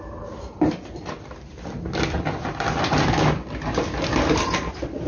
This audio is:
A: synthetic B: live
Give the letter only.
B